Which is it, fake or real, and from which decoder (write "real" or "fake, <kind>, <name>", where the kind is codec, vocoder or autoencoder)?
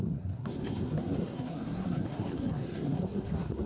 fake, codec, SNAC